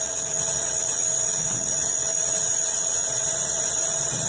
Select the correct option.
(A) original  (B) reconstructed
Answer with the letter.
B